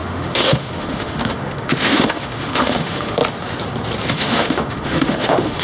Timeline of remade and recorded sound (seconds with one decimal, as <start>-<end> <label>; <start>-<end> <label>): 0.0-3.2 remade; 3.2-4.1 recorded; 4.1-5.6 remade